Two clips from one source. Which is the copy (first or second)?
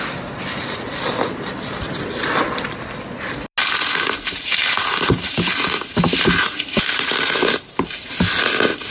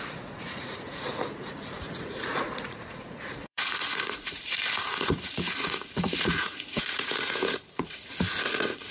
second